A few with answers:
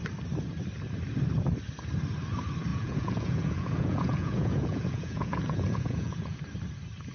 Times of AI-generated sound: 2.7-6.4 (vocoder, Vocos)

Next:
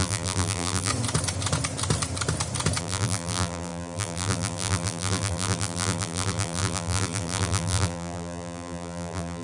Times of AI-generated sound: 0.0-0.9 (vocoder, BigVGAN v2); 2.8-9.4

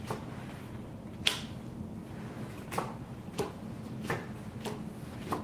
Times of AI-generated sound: none

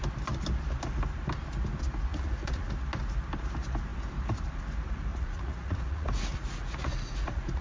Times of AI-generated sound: 2.1-2.7 (vocoder, Vocos); 5.1-7.6

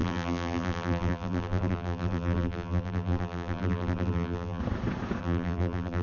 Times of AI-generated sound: 0.0-4.6 (vocoder, BigVGAN v2); 5.2-6.0

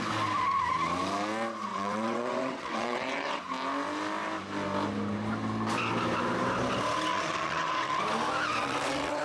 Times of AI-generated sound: 1.7-3.4 (vocoder, WaveNeXt); 7.1-8.0; 8.6-9.2

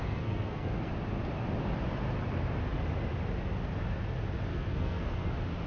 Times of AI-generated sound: 0.0-0.9 (codec, SNAC); 4.5-5.3

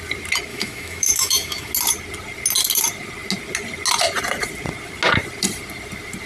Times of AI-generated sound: 0.5-1.7 (autoencoder, DAC-VAE)